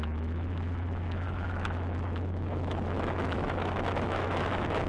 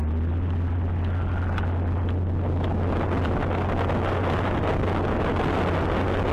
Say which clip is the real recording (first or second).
second